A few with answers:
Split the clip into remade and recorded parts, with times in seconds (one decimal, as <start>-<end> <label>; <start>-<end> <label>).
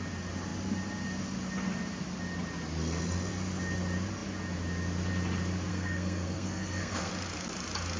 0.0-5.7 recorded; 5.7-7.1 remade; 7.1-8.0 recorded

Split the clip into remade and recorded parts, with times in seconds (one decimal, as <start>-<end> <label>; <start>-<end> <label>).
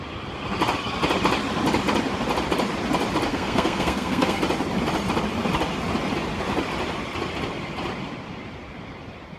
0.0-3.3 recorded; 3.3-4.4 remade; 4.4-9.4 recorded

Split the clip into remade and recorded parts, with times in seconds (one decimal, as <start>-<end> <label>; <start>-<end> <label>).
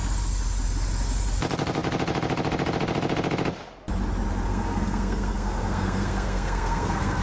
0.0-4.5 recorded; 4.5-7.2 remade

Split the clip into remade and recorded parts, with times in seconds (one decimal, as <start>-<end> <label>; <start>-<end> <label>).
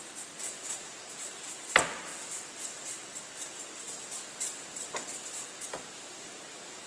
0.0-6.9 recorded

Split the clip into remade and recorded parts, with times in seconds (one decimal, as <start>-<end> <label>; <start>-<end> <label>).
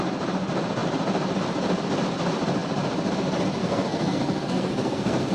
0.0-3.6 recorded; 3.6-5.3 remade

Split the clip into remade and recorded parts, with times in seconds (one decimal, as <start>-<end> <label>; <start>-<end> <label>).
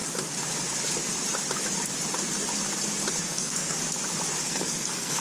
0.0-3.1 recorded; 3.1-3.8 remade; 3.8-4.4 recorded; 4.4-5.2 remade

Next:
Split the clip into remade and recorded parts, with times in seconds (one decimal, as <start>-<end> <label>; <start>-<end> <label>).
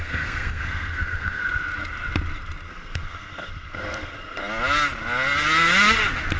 0.0-1.4 remade; 1.4-2.7 recorded; 2.7-4.4 remade; 4.4-6.4 recorded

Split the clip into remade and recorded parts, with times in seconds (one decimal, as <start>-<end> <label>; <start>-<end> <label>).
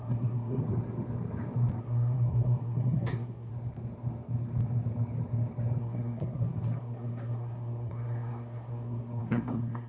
0.0-0.6 remade; 0.6-1.8 recorded; 1.8-3.5 remade; 3.5-5.8 recorded; 5.8-9.9 remade